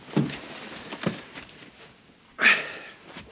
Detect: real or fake real